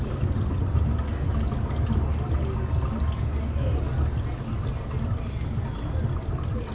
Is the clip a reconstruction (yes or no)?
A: no